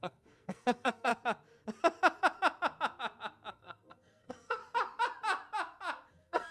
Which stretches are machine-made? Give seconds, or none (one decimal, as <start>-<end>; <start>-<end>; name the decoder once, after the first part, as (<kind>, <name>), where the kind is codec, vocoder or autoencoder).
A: 0.0-1.1 (codec, SNAC); 3.5-4.6; 6.1-6.5